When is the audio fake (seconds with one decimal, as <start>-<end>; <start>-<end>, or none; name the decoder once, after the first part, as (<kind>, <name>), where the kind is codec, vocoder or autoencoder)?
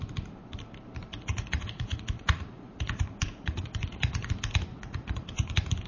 1.1-4.3 (vocoder, Vocos); 4.7-5.5